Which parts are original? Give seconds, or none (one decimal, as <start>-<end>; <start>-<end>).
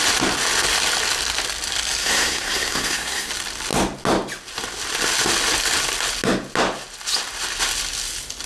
0.0-2.0; 3.3-8.5